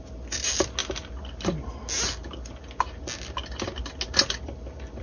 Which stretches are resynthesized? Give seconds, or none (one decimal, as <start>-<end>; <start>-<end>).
none